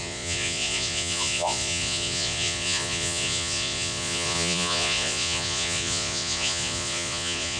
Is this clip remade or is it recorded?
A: remade